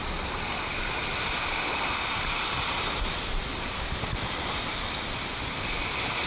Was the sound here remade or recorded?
recorded